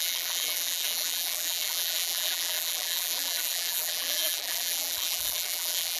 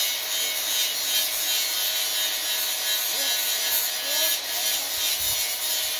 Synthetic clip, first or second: first